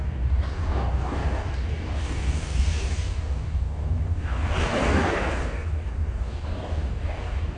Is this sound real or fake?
fake